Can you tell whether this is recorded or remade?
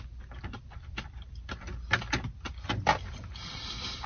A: recorded